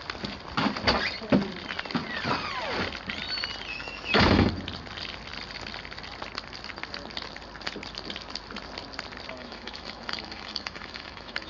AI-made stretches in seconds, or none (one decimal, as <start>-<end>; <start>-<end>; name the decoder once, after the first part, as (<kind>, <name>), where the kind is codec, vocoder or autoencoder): 3.7-4.5 (autoencoder, DAC-VAE); 9.3-11.5

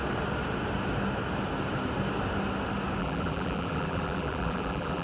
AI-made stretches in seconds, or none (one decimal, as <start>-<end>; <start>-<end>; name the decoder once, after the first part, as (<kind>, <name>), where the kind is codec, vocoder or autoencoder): 3.0-5.0 (vocoder, BigVGAN v2)

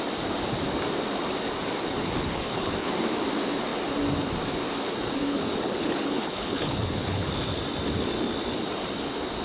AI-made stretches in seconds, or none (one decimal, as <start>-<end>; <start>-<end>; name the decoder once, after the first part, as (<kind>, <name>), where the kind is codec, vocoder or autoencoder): 2.0-2.9 (codec, HILCodec); 5.2-7.3

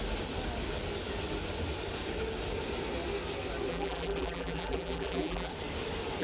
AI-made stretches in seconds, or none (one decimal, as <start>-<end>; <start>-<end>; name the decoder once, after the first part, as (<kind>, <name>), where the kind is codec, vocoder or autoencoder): 3.7-5.5 (vocoder, BigVGAN v2)

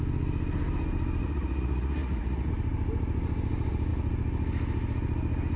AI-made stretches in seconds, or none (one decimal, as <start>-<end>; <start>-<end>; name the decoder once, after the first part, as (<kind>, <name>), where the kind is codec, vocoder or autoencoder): 1.2-2.5 (vocoder, Vocos)

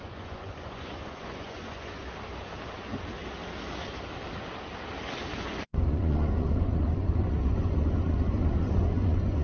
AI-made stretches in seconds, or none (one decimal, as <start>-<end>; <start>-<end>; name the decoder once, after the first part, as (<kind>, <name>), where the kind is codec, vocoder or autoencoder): 0.0-2.0 (vocoder, Vocos); 5.5-9.4

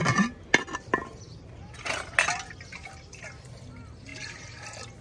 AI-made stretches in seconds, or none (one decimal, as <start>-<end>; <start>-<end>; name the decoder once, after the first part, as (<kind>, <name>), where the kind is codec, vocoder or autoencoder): none

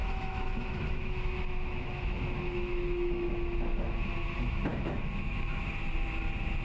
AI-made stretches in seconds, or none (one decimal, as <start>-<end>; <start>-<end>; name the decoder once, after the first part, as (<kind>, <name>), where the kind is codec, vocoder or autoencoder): 0.0-3.3 (autoencoder, DAC-VAE); 4.7-5.6